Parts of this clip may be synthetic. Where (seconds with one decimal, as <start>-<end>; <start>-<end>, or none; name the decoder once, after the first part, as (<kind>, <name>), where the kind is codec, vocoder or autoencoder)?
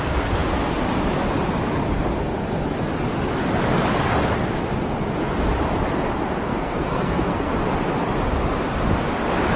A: 6.5-7.5 (codec, SNAC)